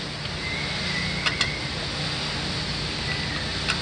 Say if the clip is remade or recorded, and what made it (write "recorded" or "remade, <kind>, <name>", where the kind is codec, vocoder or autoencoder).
recorded